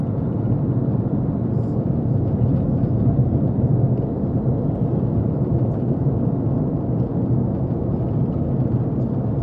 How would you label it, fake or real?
real